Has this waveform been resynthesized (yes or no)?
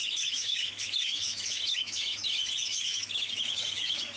yes